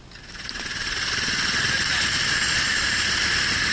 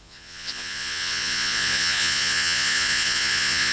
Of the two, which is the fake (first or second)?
second